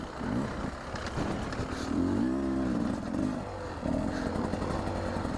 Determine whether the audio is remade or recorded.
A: recorded